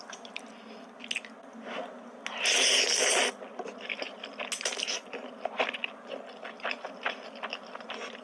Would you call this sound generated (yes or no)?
no